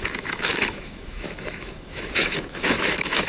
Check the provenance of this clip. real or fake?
fake